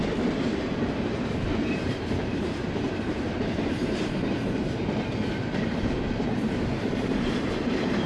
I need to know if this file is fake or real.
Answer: fake